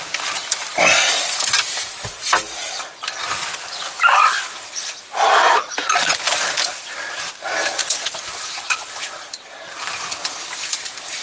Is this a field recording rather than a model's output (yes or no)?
yes